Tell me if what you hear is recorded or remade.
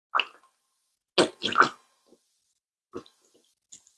recorded